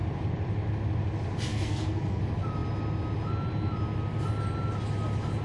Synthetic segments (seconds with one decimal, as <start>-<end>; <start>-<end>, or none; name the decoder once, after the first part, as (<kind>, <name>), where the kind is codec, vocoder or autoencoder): 1.5-2.2 (codec, SNAC)